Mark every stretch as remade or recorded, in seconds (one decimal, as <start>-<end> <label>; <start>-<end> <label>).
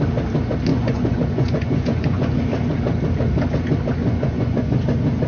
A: 0.0-0.7 recorded; 0.7-2.4 remade; 2.4-4.0 recorded; 4.0-4.7 remade; 4.7-5.3 recorded